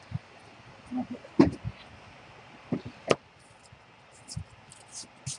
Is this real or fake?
real